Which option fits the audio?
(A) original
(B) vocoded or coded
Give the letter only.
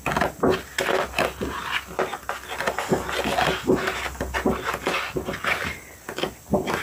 A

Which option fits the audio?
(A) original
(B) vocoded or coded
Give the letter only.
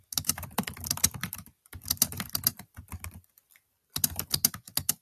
A